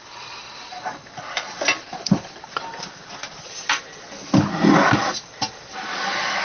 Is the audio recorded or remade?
recorded